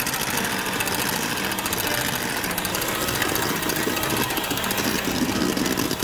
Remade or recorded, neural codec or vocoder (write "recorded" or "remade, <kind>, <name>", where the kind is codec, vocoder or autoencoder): recorded